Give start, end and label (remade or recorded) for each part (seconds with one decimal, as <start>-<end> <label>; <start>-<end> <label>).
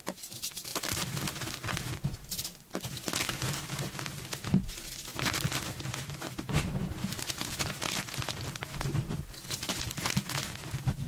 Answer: 0.0-2.4 recorded; 2.4-3.1 remade; 3.1-11.1 recorded